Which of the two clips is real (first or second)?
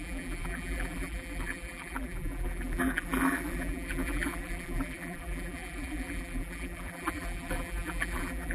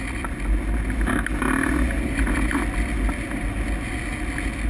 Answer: second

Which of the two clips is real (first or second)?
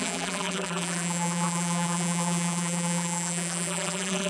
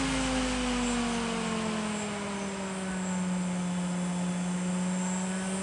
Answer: second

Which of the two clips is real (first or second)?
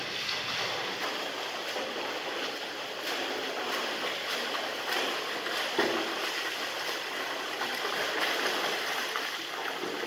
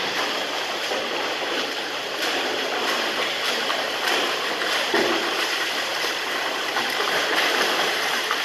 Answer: first